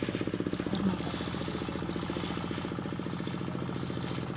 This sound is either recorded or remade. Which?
recorded